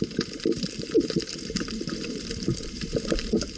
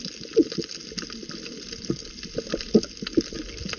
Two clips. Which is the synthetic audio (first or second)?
first